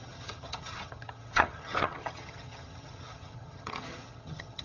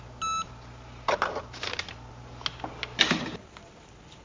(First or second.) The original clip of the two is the second